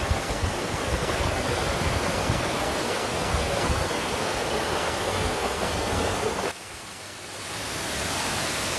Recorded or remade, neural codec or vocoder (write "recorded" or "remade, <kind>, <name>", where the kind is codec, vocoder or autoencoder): remade, codec, SNAC